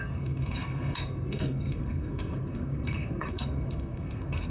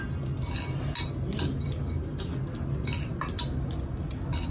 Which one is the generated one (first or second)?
first